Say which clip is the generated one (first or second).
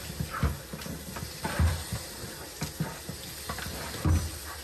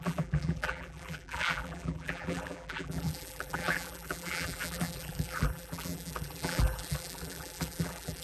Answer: second